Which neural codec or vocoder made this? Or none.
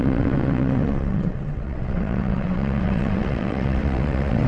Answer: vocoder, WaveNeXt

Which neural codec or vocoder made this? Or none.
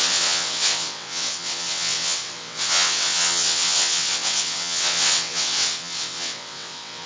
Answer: vocoder, WaveNeXt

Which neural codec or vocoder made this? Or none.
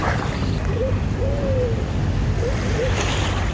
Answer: none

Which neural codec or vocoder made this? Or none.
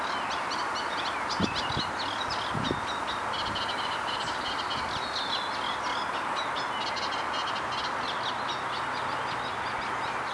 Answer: none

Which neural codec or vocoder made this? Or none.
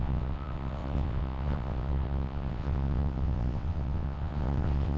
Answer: vocoder, WaveNeXt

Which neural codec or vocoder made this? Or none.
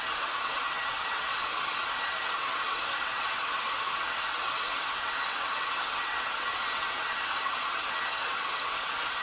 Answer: vocoder, WaveNeXt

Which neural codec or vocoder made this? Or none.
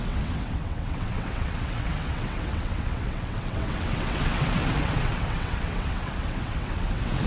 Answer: vocoder, WaveNeXt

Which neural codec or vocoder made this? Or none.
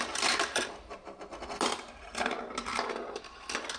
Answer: none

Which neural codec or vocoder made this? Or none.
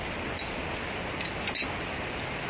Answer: none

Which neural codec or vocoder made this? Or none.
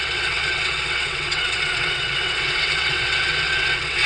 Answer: vocoder, WaveNeXt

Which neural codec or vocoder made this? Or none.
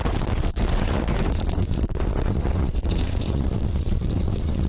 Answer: vocoder, WaveNeXt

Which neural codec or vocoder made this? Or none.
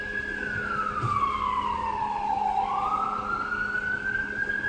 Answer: none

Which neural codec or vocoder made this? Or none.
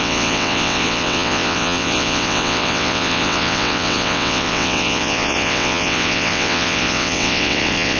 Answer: vocoder, WaveNeXt